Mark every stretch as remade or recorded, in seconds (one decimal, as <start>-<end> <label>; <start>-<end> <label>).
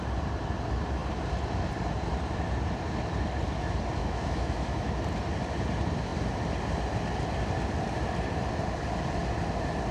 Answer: 0.0-4.0 recorded; 4.0-4.9 remade; 4.9-9.9 recorded